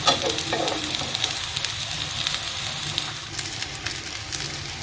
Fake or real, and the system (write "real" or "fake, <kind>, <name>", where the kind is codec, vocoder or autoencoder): real